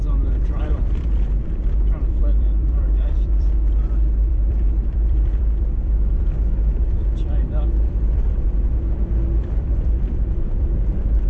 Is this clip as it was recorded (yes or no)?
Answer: no